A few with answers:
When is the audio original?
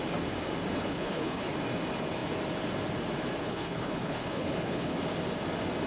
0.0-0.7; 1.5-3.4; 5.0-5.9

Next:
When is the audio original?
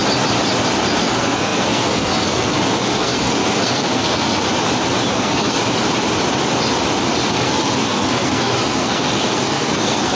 0.0-1.0; 4.5-5.1; 5.6-7.3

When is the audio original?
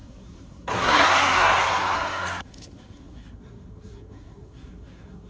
none